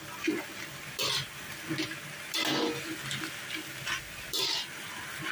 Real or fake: real